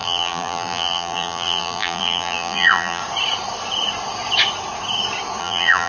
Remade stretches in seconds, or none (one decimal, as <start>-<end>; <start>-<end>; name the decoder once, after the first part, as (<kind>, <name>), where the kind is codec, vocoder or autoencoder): 0.0-3.0 (vocoder, BigVGAN v2); 5.4-5.9